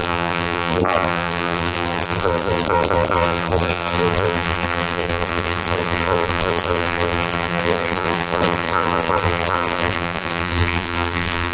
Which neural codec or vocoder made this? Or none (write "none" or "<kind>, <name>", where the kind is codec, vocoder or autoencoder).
vocoder, BigVGAN v2